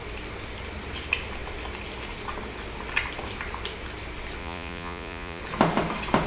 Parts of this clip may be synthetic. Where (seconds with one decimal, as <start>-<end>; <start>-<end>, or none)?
4.4-5.4